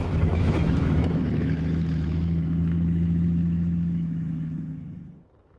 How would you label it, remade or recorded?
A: remade